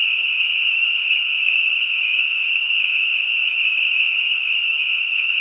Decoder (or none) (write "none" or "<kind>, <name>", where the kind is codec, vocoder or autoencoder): autoencoder, DAC-VAE